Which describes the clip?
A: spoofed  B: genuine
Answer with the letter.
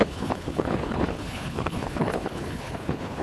A